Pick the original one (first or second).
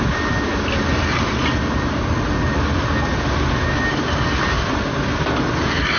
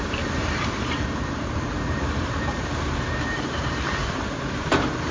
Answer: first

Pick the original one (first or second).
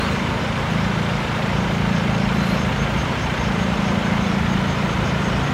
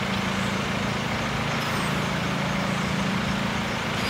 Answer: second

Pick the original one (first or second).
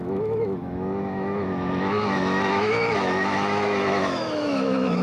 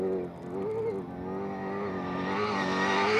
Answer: second